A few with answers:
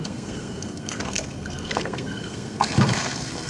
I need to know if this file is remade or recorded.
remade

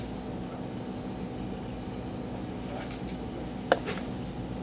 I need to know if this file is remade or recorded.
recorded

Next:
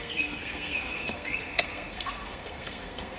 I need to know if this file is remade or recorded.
remade